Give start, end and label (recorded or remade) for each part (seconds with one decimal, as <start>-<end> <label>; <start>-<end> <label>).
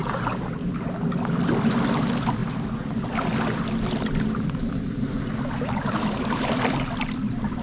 0.0-2.0 recorded; 2.0-2.4 remade; 2.4-5.5 recorded; 5.5-7.6 remade